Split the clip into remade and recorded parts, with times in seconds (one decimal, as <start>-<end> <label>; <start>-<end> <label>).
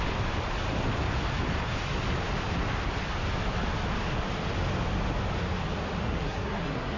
0.0-6.0 recorded; 6.0-7.0 remade